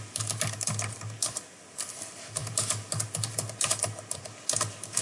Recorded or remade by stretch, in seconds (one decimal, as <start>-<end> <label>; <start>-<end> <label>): 0.0-5.0 recorded